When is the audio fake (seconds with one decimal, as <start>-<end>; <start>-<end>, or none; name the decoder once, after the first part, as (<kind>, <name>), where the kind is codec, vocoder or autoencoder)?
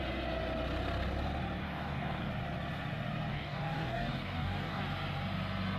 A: 1.6-2.3 (codec, DAC); 3.3-4.8